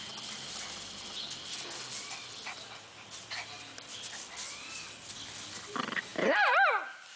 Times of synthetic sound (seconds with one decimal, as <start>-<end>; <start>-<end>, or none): 6.1-6.7

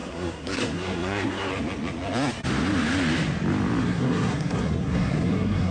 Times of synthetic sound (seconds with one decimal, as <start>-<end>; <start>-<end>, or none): 0.0-1.5; 3.8-5.7

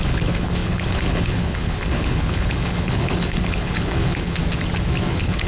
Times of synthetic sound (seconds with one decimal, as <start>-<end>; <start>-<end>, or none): 0.0-4.4; 5.1-5.5

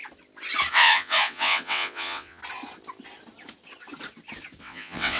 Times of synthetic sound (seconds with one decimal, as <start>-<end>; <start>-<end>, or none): 0.7-2.4; 4.6-5.2